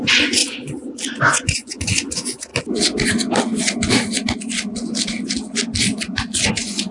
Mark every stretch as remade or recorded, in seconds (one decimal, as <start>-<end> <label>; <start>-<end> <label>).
0.0-0.4 remade; 0.4-1.2 recorded; 1.2-2.5 remade; 2.5-6.5 recorded; 6.5-6.9 remade